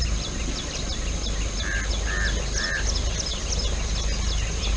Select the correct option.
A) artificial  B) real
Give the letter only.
B